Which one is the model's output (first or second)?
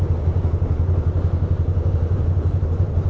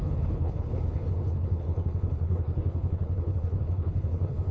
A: second